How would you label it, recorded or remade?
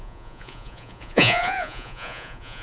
remade